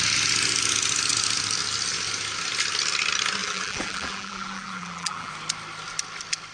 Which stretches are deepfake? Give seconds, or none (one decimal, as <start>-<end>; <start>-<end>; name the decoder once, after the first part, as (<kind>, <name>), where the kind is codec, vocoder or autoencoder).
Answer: 3.4-5.3 (vocoder, BigVGAN v2)